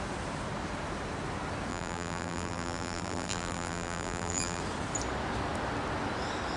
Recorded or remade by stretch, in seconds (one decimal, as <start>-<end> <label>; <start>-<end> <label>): 0.0-1.7 recorded; 1.7-4.6 remade; 4.6-6.6 recorded